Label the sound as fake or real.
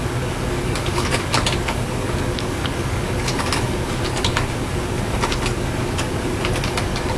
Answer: fake